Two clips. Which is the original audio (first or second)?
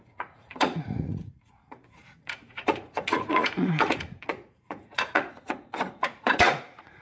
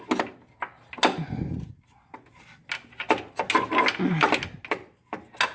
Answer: second